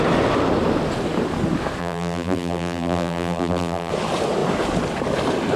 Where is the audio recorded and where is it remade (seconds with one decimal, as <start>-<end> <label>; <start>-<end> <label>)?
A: 0.0-1.8 recorded; 1.8-3.9 remade; 3.9-5.6 recorded